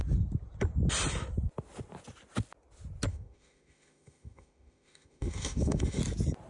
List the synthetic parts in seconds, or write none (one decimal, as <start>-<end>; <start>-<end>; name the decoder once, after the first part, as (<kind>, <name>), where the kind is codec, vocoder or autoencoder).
3.1-6.0 (autoencoder, DAC-VAE)